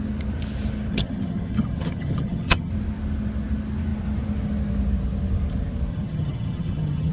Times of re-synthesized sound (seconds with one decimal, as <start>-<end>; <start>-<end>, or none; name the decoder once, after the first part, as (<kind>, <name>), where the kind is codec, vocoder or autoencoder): 0.9-2.7 (vocoder, HiFi-GAN); 5.9-7.1